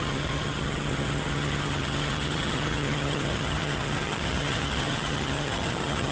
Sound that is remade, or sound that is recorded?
remade